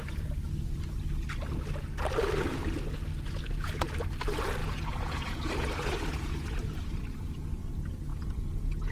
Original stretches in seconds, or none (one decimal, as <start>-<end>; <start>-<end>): 0.0-3.1; 3.9-4.6; 7.0-8.1